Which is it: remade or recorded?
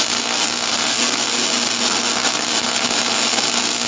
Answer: recorded